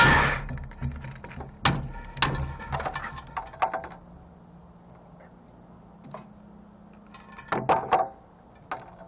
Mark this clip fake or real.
real